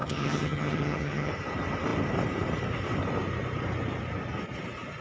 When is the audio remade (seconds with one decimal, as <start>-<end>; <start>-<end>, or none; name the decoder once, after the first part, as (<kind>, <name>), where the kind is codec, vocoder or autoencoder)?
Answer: 0.0-1.3 (vocoder, HiFi-GAN)